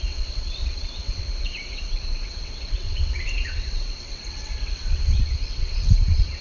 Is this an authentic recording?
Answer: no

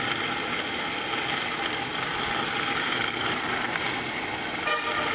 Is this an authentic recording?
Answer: yes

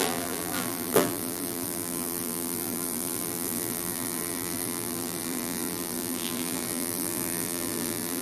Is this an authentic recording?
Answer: no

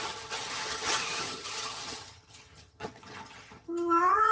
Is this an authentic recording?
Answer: no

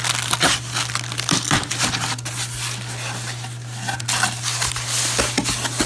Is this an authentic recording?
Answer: yes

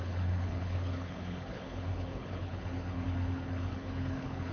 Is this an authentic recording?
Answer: no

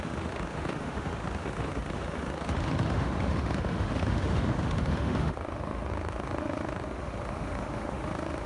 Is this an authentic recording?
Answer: no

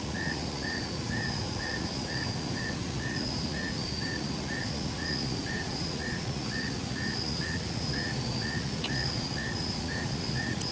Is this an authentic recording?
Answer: no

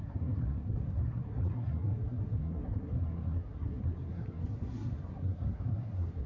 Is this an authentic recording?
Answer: no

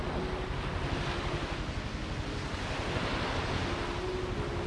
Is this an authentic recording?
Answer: yes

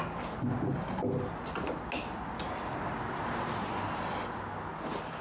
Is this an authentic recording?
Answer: yes